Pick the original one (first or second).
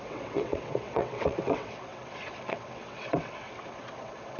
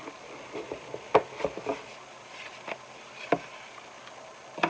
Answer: second